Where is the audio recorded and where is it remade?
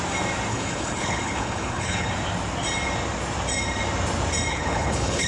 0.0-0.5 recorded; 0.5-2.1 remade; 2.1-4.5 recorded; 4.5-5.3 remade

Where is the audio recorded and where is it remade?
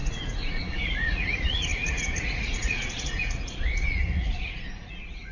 0.0-5.3 remade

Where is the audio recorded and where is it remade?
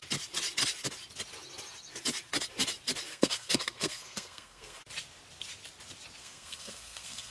0.0-3.1 recorded; 3.1-4.8 remade; 4.8-6.2 recorded; 6.2-7.3 remade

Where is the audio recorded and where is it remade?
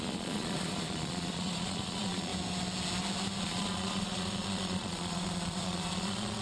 0.0-2.3 remade; 2.3-3.4 recorded; 3.4-6.4 remade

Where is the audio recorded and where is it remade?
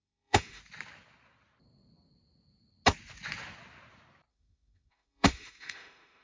0.0-0.6 remade; 0.6-4.3 recorded; 4.3-6.2 remade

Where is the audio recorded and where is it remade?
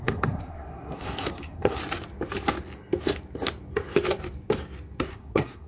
0.0-1.8 remade; 1.8-5.1 recorded; 5.1-5.7 remade